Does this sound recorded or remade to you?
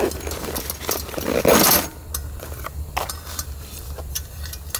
recorded